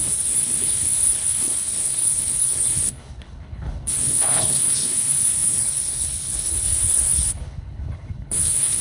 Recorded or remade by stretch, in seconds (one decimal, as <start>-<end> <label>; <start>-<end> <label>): 0.0-8.8 remade